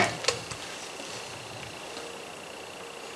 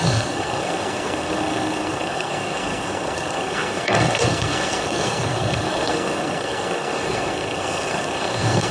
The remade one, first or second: second